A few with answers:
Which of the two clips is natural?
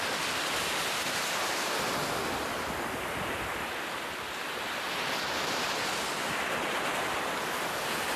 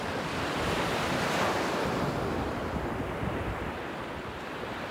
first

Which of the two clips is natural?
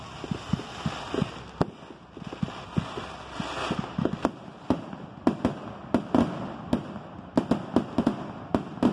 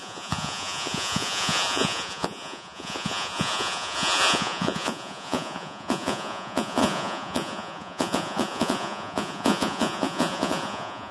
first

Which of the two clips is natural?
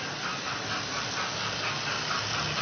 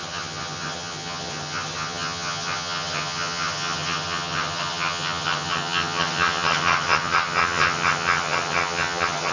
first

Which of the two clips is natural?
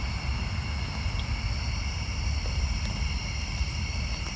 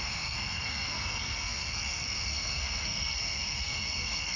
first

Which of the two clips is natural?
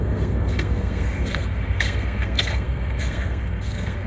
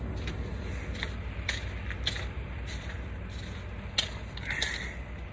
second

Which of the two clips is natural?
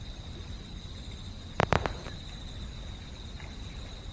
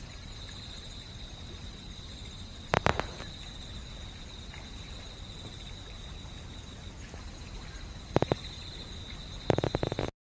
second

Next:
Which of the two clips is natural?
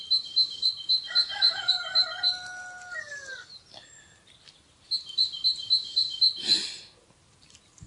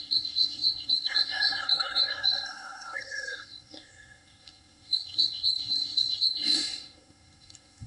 first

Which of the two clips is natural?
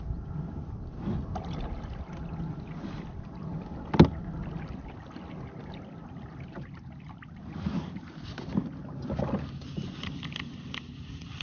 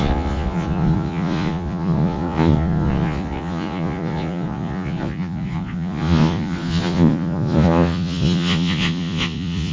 first